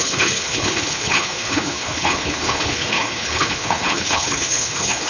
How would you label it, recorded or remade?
remade